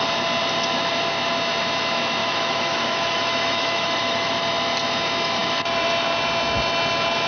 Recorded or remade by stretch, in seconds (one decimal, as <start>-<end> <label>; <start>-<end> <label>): 0.0-2.2 recorded; 2.2-4.3 remade; 4.3-7.3 recorded